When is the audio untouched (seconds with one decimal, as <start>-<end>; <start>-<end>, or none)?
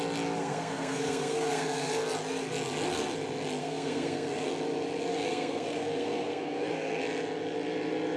0.0-0.4; 1.9-3.6; 4.5-5.1; 7.0-8.2